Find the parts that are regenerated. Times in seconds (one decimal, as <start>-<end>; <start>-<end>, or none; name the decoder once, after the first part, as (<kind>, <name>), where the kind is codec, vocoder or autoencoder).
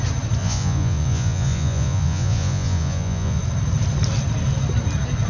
0.4-3.4 (vocoder, Vocos)